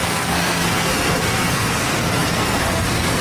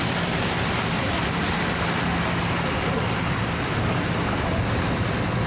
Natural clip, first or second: second